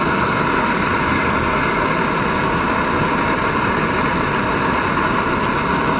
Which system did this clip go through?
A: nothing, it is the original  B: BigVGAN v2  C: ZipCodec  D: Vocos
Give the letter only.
A